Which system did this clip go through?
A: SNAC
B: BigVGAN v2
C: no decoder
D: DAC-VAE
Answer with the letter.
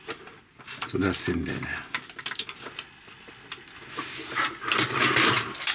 C